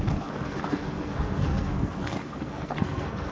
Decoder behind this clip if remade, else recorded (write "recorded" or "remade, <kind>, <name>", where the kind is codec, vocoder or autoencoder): remade, codec, SNAC